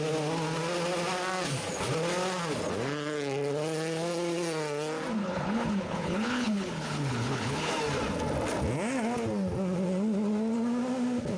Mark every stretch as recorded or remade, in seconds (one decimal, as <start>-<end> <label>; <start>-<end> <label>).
0.0-5.2 recorded; 5.2-7.7 remade; 7.7-11.4 recorded